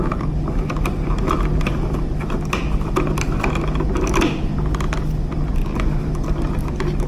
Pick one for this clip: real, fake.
real